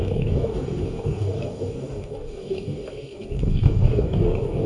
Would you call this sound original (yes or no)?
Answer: no